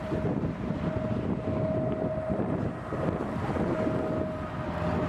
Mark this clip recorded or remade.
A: recorded